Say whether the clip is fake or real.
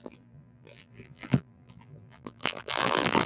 fake